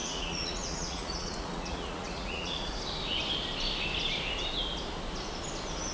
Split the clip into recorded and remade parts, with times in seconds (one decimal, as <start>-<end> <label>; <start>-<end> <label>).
0.0-2.7 remade; 2.7-5.9 recorded